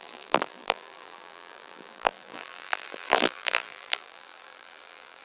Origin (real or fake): fake